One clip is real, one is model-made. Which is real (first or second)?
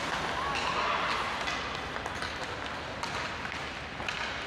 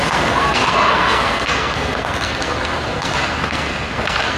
first